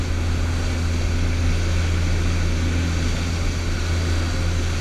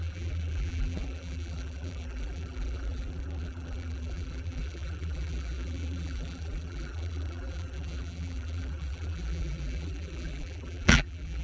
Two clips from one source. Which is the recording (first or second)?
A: first